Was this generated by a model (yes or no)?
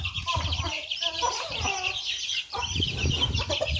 yes